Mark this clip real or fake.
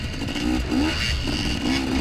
real